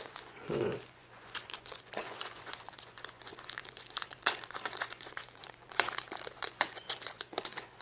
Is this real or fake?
fake